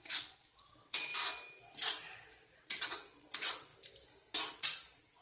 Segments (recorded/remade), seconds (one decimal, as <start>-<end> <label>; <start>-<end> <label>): 0.0-1.1 remade; 1.1-2.6 recorded; 2.6-3.7 remade; 3.7-4.5 recorded; 4.5-5.2 remade